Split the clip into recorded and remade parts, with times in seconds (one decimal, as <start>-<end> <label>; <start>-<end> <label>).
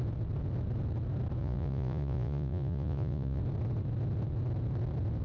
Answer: 0.0-1.4 recorded; 1.4-3.4 remade; 3.4-5.2 recorded